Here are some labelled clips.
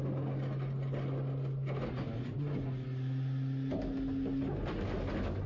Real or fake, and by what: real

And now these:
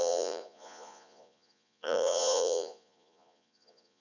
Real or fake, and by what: fake, vocoder, Vocos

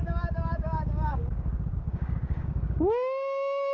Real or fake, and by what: fake, codec, DAC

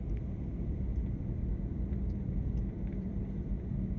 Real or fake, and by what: fake, vocoder, BigVGAN v2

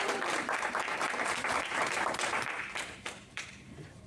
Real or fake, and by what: fake, vocoder, BigVGAN v2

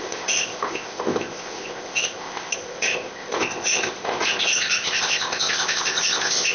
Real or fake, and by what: fake, codec, ZipCodec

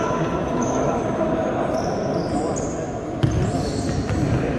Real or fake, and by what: real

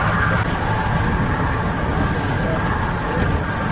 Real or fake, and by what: real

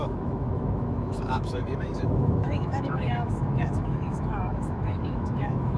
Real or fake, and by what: fake, autoencoder, DAC-VAE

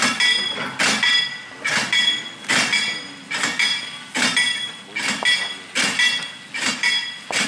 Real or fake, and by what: real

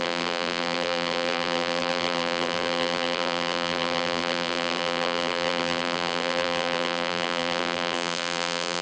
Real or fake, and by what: fake, vocoder, BigVGAN v2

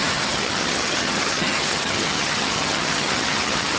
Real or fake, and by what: fake, vocoder, HiFi-GAN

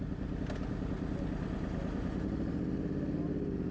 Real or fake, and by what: real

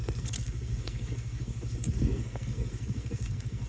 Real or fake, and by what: fake, codec, SNAC